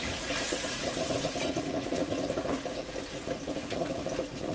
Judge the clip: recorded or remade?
remade